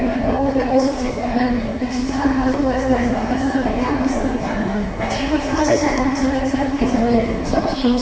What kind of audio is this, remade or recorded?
remade